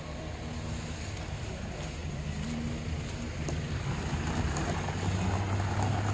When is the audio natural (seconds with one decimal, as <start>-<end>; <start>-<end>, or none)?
0.0-6.1

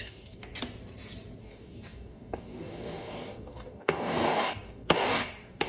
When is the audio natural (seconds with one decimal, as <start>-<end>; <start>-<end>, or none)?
0.5-1.4

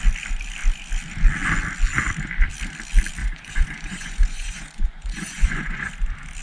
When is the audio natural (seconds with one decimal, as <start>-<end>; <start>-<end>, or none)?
0.0-3.2; 5.9-6.4

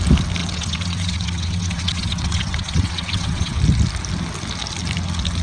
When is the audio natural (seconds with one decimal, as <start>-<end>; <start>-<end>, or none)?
0.0-0.4; 3.6-5.4

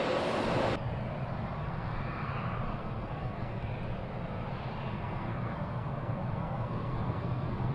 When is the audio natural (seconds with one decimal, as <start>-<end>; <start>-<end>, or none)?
0.0-1.6; 2.3-2.7; 3.7-4.9